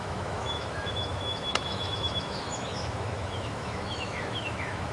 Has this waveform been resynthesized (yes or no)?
yes